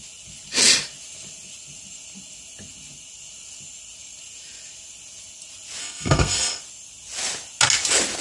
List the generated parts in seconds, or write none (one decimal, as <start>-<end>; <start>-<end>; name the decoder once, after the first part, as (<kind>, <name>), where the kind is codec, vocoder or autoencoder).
5.8-6.6 (codec, SNAC)